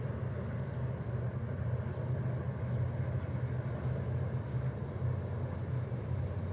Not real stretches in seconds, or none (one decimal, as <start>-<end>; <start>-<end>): none